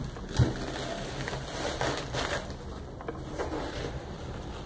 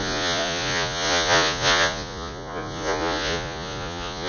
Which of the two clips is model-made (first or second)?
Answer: second